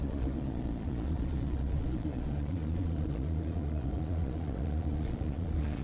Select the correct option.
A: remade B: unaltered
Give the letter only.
A